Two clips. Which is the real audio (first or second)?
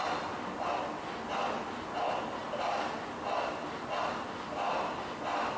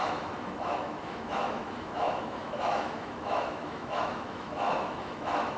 first